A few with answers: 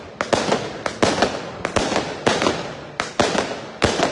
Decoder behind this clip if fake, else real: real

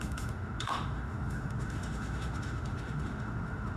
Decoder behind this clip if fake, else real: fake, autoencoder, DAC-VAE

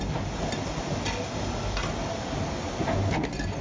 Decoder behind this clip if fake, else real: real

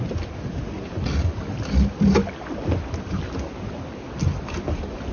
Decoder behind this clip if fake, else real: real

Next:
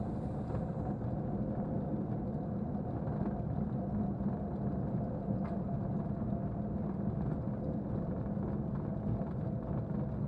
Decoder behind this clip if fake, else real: real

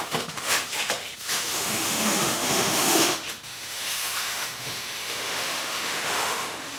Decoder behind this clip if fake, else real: fake, autoencoder, DAC-VAE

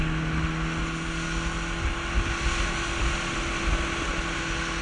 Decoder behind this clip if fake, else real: real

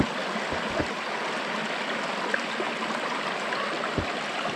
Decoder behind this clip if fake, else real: real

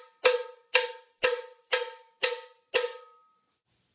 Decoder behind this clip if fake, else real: real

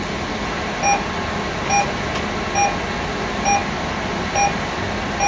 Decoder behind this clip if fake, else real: real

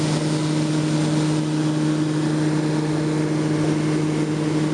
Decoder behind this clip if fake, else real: real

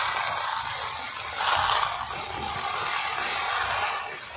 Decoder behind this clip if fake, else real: real